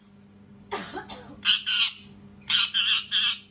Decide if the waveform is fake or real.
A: real